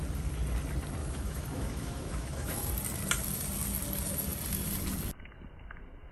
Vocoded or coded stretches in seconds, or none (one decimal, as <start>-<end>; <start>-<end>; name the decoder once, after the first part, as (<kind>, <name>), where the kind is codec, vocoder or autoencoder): 1.0-2.7 (autoencoder, DAC-VAE)